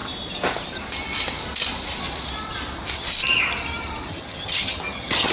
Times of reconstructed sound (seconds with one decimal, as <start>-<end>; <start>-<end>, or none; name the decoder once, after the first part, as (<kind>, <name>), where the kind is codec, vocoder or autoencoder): 4.1-5.3 (vocoder, HiFi-GAN)